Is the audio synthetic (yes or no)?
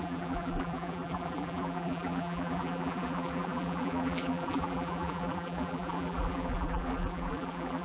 yes